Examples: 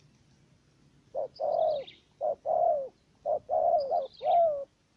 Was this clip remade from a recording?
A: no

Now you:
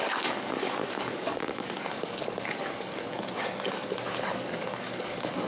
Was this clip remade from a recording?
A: yes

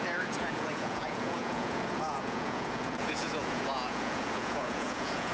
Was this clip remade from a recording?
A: yes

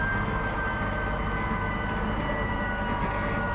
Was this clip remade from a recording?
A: no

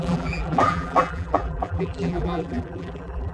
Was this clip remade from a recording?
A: yes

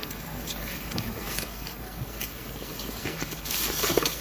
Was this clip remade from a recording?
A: yes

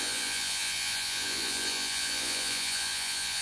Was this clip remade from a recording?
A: yes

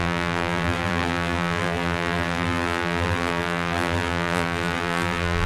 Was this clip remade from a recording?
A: yes